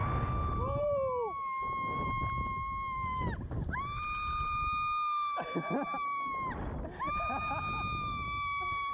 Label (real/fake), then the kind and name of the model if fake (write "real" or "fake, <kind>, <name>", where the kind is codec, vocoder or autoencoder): real